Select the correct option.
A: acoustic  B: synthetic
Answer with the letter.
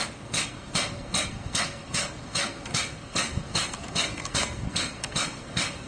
B